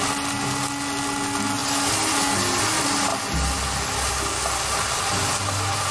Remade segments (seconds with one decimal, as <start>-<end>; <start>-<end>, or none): none

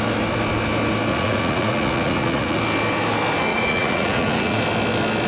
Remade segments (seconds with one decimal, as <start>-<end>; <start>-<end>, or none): 1.1-2.6; 3.5-4.6

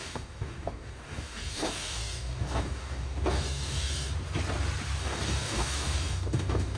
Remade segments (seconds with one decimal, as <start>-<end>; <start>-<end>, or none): 0.0-4.1; 5.0-6.8

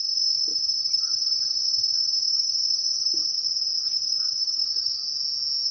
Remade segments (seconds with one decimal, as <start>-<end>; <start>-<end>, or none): 0.5-1.2

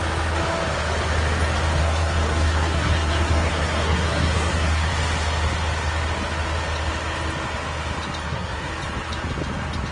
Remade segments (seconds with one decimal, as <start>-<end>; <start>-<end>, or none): 1.8-4.9; 8.2-8.7